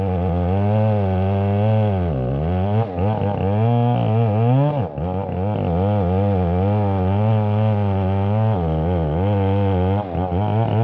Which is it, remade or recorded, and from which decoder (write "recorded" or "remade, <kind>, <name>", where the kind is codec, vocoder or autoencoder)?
recorded